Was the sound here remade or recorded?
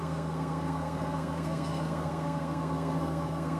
remade